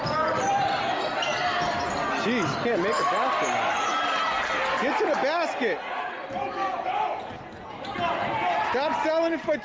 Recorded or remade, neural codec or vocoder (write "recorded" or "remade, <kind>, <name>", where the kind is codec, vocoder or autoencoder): recorded